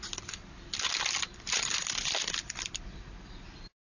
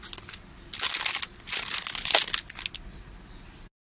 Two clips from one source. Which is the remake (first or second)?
first